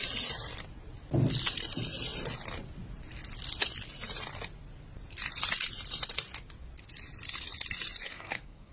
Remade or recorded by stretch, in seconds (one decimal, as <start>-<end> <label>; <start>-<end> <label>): 0.0-8.1 recorded; 8.1-8.7 remade